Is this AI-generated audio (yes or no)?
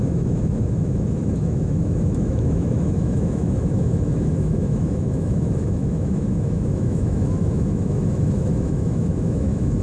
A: yes